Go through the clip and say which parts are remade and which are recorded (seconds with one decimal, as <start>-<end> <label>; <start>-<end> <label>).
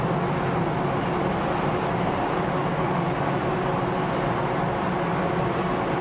0.0-6.0 recorded